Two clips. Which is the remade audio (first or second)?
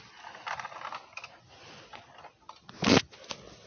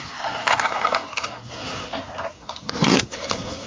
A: second